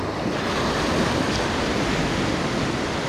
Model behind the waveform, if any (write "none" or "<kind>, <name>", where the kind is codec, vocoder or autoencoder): none